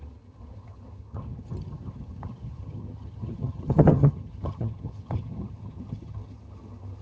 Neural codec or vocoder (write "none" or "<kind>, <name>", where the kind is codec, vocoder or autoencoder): vocoder, HiFi-GAN